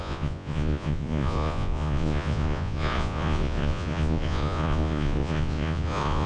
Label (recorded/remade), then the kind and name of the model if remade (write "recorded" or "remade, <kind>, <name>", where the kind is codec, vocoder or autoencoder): remade, vocoder, Vocos